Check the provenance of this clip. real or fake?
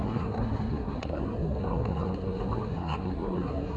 fake